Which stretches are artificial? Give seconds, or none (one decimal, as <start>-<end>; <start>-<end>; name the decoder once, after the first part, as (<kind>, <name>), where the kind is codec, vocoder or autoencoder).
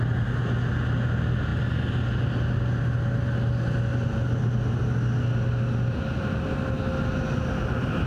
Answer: none